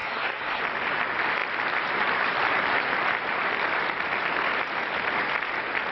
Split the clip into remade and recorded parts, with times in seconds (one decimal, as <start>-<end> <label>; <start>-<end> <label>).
0.0-0.6 remade; 0.6-5.9 recorded